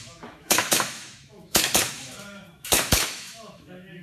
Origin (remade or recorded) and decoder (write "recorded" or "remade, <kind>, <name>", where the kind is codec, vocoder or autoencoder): remade, autoencoder, DAC-VAE